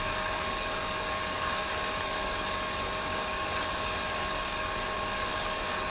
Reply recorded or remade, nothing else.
remade